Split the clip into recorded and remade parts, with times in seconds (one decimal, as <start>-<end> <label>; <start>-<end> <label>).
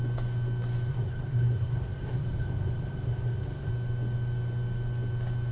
0.0-0.9 recorded; 0.9-3.7 remade; 3.7-5.5 recorded